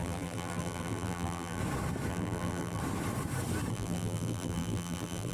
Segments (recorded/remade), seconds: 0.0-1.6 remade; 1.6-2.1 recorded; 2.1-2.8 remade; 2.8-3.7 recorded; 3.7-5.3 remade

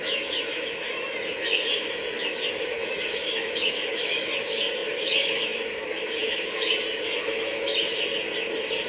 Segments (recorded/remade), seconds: 0.0-7.7 remade; 7.7-8.9 recorded

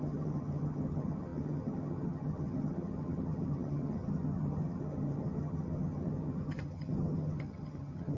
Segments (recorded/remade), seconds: 0.0-8.2 remade

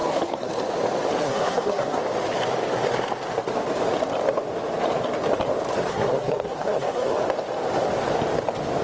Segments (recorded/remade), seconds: 0.0-0.5 remade; 0.5-1.2 recorded; 1.2-2.0 remade; 2.0-5.9 recorded; 5.9-7.2 remade; 7.2-8.8 recorded

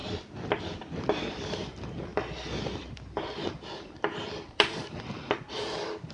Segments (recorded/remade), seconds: 0.0-0.6 recorded; 0.6-6.1 remade